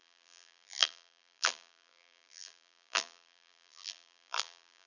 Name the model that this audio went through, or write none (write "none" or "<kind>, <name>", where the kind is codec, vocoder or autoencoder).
vocoder, BigVGAN v2